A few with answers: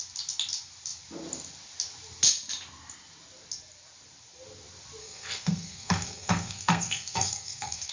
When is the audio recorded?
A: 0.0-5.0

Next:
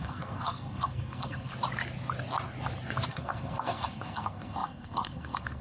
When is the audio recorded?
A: 1.5-3.1